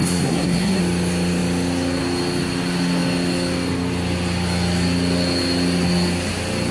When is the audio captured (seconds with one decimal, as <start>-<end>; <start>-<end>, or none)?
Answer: 0.8-6.7